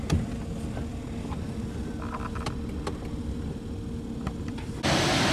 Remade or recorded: recorded